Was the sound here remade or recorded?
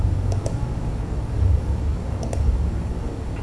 remade